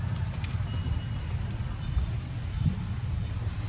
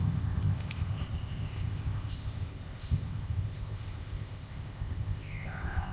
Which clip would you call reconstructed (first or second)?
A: second